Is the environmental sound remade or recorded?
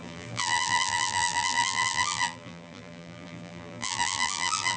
remade